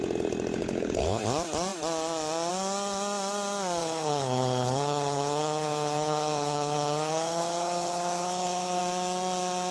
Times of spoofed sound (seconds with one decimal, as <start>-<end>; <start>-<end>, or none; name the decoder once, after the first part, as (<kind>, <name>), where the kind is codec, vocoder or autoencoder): 0.6-1.2 (codec, HILCodec); 3.8-8.8